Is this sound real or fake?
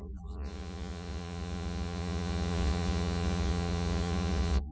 fake